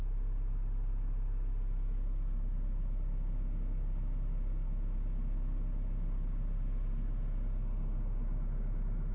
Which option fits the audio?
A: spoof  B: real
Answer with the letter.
B